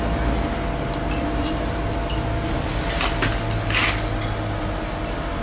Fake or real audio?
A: real